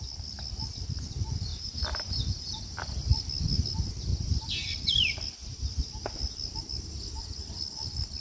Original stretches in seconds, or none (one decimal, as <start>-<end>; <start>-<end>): 0.0-1.5; 2.6-8.2